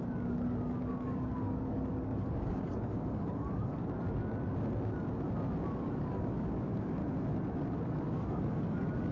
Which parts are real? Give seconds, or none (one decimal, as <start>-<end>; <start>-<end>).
3.8-5.8; 7.0-8.0